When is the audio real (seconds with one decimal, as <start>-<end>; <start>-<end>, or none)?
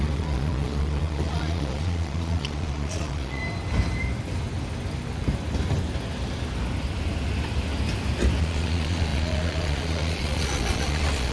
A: 3.4-8.4